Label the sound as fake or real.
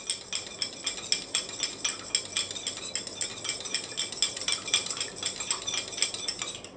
real